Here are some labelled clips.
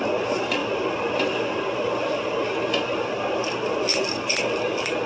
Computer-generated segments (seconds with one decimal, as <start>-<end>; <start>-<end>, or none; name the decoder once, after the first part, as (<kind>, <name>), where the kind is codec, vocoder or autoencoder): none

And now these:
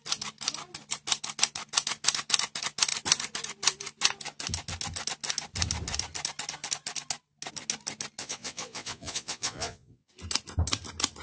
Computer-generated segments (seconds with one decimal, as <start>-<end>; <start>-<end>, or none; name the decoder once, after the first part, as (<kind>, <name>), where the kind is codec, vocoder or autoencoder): 8.2-10.1 (vocoder, Vocos)

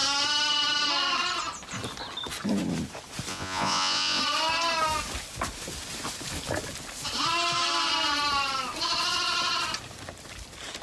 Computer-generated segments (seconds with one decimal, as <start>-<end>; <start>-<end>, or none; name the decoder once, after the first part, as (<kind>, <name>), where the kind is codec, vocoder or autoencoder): 3.3-4.2 (vocoder, Vocos)